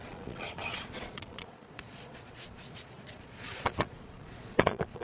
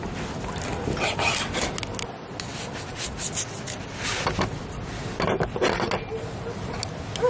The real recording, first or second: second